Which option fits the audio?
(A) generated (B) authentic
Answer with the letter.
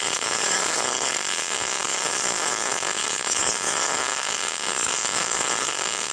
A